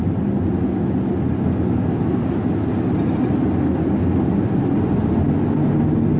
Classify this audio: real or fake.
real